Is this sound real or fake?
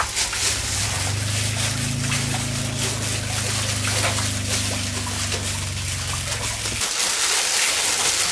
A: real